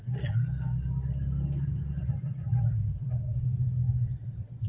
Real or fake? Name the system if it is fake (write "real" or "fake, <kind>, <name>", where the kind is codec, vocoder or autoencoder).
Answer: real